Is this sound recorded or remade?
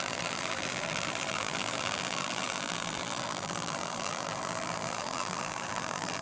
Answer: remade